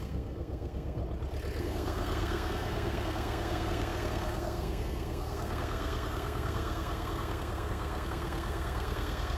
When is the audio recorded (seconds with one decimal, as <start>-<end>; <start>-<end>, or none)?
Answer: 1.0-1.6